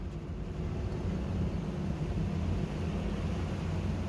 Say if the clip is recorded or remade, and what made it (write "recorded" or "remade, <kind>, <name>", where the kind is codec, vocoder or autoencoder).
recorded